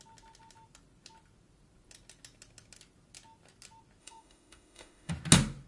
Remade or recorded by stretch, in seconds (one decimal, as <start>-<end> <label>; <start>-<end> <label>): 0.0-4.0 recorded; 4.0-5.1 remade; 5.1-5.7 recorded